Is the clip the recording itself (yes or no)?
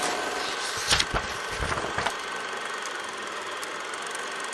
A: no